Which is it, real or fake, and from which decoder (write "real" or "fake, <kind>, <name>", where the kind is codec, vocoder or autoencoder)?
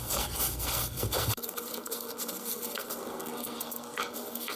fake, codec, SNAC